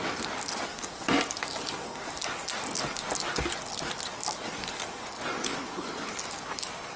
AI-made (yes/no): no